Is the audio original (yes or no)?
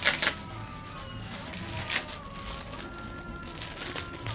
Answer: yes